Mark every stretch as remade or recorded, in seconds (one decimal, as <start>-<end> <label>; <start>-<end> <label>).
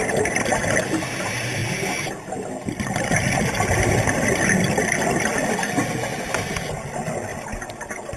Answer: 0.0-8.2 recorded